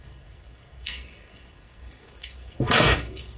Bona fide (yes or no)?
no